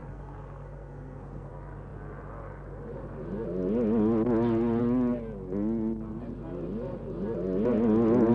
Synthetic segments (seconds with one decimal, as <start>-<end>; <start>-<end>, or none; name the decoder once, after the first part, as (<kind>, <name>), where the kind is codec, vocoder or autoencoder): 0.0-1.5 (codec, SNAC)